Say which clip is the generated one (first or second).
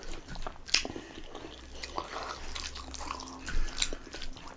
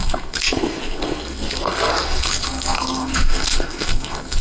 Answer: second